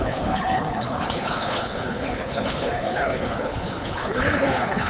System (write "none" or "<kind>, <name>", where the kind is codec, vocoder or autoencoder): codec, HILCodec